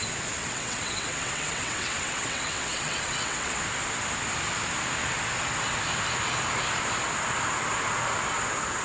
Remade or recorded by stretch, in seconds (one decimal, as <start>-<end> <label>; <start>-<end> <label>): 0.0-0.4 recorded; 0.4-3.6 remade; 3.6-8.8 recorded